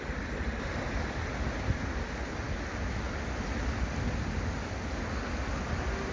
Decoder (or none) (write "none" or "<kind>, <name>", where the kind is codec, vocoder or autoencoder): none